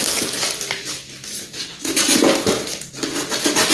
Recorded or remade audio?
recorded